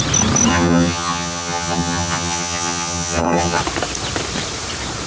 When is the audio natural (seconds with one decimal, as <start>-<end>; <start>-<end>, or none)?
0.0-0.5; 3.6-5.1